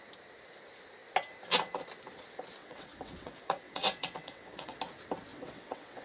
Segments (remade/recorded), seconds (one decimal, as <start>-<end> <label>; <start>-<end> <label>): 0.0-2.6 recorded; 2.6-4.8 remade; 4.8-5.3 recorded; 5.3-6.0 remade